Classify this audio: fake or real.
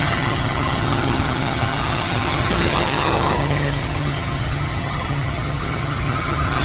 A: fake